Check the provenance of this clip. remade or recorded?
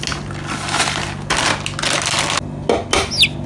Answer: recorded